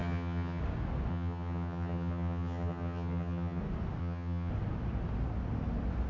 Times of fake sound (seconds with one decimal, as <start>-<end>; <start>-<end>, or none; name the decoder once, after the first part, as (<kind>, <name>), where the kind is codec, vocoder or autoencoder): 0.0-0.6 (vocoder, HiFi-GAN); 1.1-3.6; 4.0-4.5